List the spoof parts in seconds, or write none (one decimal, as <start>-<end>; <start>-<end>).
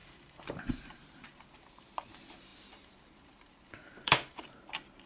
0.0-5.1